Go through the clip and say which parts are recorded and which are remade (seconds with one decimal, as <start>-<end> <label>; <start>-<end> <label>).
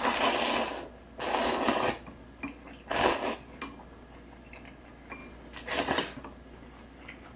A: 0.0-7.4 recorded